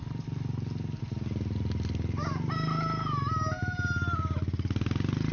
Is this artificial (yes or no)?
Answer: no